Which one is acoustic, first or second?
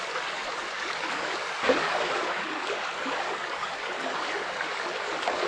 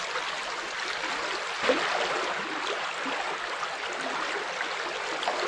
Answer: second